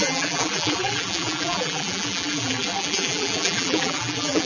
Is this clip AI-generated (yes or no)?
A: yes